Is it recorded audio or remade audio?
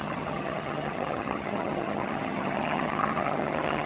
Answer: remade